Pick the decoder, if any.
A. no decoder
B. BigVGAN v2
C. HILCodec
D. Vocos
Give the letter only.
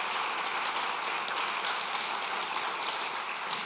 A